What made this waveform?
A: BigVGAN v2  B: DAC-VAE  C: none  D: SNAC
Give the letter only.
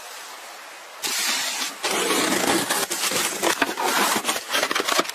A